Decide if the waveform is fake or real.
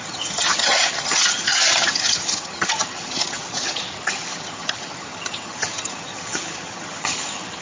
fake